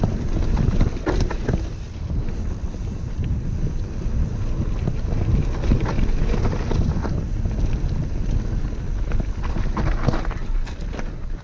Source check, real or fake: real